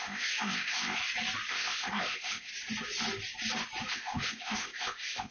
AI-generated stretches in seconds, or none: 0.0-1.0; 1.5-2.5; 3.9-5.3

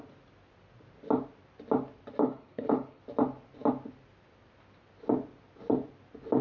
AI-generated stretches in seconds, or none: 2.2-3.0

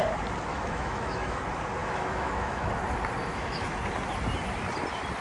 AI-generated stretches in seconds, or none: 0.5-1.4; 1.8-2.8; 3.2-3.8